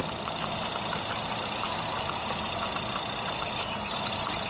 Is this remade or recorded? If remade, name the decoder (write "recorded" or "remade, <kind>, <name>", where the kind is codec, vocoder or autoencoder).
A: recorded